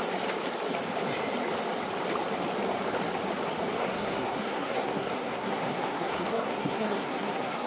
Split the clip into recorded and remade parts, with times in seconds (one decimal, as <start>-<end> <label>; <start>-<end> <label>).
0.0-3.8 recorded; 3.8-7.7 remade